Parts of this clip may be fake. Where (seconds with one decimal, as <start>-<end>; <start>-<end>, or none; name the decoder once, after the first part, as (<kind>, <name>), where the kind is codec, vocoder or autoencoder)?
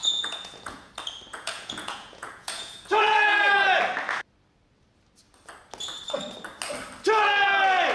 0.0-0.9 (vocoder, Vocos); 1.3-3.8